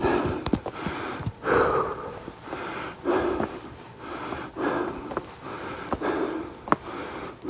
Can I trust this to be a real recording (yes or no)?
yes